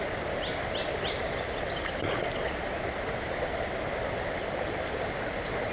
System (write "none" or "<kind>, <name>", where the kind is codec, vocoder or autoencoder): none